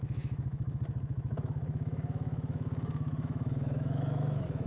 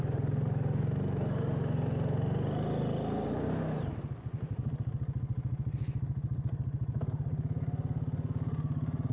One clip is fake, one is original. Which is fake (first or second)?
first